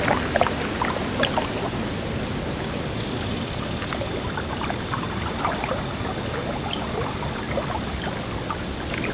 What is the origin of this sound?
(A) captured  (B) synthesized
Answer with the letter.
A